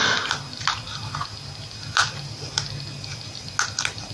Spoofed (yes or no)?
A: no